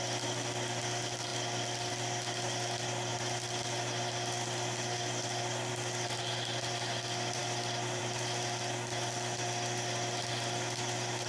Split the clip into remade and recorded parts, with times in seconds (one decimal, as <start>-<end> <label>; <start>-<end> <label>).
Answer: 0.0-7.4 recorded; 7.4-8.0 remade; 8.0-11.3 recorded